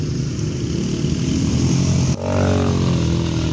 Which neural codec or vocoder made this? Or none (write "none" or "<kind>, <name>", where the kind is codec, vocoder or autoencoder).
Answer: none